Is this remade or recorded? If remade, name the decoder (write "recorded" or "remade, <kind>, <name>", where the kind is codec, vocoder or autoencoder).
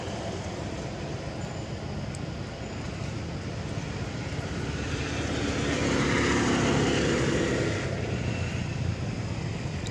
recorded